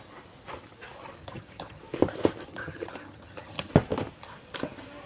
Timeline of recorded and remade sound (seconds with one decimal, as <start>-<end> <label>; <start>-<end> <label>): 0.0-1.2 recorded; 1.2-1.8 remade; 1.8-2.5 recorded; 2.5-3.7 remade; 3.7-5.1 recorded

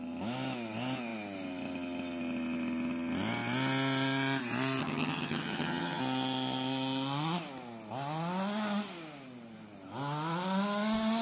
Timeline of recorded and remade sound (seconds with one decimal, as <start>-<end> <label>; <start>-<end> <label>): 0.0-4.8 recorded; 4.8-6.0 remade; 6.0-11.2 recorded

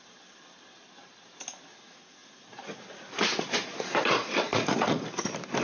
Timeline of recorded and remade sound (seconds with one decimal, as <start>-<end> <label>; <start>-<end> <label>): 0.0-1.7 recorded; 1.7-5.1 remade; 5.1-5.6 recorded

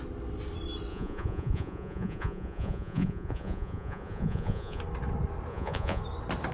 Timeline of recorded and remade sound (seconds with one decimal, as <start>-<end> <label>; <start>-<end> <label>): 0.0-0.9 recorded; 0.9-4.8 remade; 4.8-5.5 recorded; 5.5-6.0 remade; 6.0-6.5 recorded